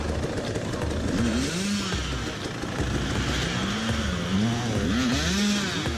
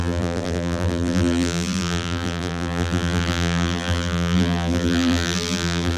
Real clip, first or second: first